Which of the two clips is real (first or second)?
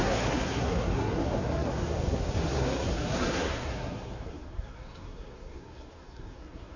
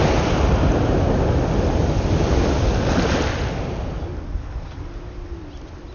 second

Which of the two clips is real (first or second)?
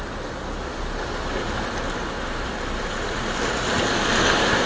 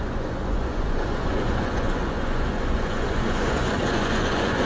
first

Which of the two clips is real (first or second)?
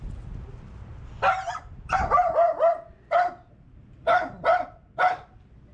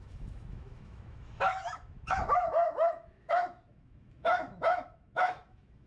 first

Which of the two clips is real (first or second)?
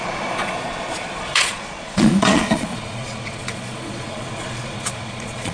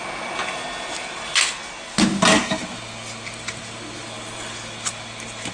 second